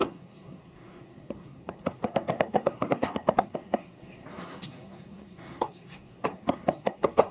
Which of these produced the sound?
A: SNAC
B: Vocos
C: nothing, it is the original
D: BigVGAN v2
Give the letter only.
A